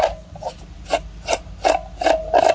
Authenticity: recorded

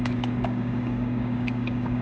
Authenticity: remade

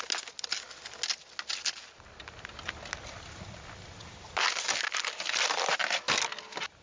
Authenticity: recorded